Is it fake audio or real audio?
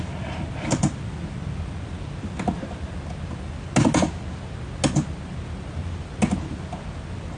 real